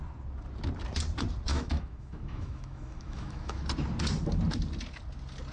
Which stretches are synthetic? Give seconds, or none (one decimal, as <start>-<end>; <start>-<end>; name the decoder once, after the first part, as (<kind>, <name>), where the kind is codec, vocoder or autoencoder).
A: 1.5-3.6 (autoencoder, DAC-VAE)